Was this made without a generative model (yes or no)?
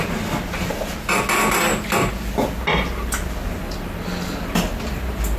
yes